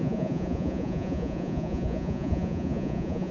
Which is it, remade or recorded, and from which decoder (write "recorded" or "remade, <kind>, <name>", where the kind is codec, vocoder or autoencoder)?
remade, vocoder, Vocos